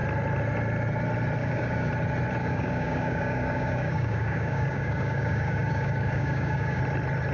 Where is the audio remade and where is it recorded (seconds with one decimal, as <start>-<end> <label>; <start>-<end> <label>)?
0.0-1.4 recorded; 1.4-1.9 remade; 1.9-2.4 recorded; 2.4-6.8 remade; 6.8-7.3 recorded